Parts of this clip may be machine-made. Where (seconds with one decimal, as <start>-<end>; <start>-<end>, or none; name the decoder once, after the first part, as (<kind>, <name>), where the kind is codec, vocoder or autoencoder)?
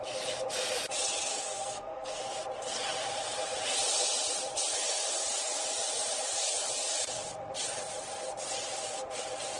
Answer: 1.3-2.2 (codec, SNAC)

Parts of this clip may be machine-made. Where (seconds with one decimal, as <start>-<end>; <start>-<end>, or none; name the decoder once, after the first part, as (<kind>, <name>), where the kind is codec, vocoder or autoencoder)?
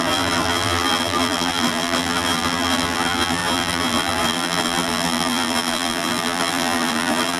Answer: 0.0-7.4 (vocoder, BigVGAN v2)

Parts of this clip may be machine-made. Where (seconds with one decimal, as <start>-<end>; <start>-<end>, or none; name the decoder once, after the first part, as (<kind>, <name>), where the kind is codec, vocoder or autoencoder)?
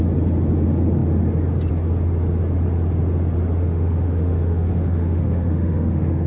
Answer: 3.6-6.3 (autoencoder, DAC-VAE)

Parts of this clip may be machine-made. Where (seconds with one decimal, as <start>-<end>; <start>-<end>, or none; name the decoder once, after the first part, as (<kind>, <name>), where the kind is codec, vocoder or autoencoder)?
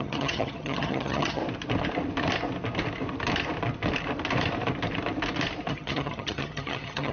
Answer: 0.0-1.4 (vocoder, HiFi-GAN); 5.7-7.1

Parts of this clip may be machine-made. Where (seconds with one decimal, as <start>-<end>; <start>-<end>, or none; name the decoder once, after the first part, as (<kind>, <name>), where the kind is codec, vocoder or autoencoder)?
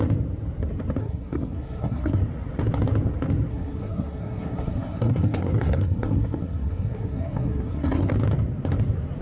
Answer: 1.0-2.2 (codec, SNAC); 3.5-8.1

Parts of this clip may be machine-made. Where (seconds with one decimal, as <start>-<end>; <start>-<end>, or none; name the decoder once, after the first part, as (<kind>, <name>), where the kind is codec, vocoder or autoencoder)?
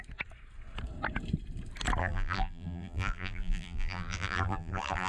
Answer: 2.0-5.1 (vocoder, BigVGAN v2)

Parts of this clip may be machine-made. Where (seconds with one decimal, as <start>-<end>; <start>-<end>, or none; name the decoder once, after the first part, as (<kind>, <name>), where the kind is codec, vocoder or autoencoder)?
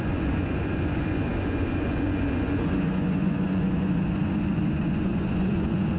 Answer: 0.0-6.0 (vocoder, Vocos)